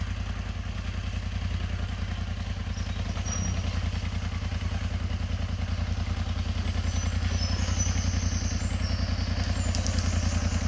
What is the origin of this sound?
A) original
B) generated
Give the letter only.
A